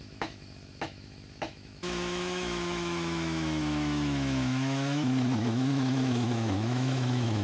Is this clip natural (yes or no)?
no